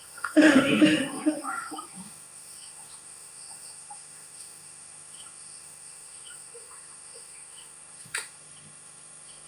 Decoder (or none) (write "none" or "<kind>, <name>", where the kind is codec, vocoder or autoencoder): autoencoder, DAC-VAE